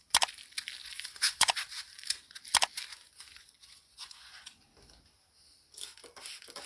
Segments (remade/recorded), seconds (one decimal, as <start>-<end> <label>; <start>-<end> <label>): 0.0-0.8 recorded; 0.8-1.6 remade; 1.6-2.9 recorded; 2.9-4.6 remade; 4.6-6.7 recorded